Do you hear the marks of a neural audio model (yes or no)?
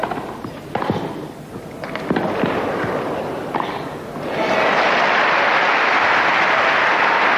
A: no